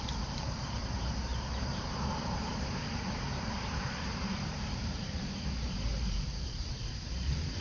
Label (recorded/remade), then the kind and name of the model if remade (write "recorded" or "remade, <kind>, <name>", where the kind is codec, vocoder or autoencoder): remade, vocoder, BigVGAN v2